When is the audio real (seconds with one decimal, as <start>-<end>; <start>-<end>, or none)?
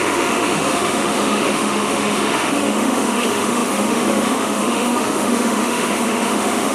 none